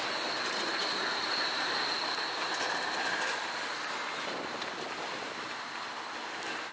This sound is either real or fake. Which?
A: real